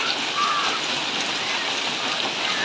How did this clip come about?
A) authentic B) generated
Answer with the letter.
A